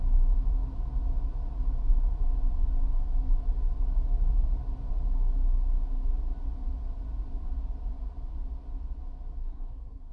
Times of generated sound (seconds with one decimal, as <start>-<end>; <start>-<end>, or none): 9.4-10.1

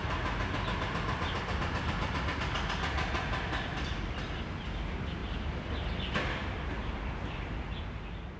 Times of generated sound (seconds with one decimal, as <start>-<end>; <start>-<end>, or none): none